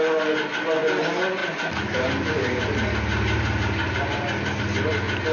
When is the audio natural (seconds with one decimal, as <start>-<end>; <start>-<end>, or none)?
0.0-5.3